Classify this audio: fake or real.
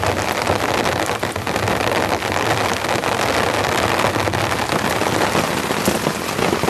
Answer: real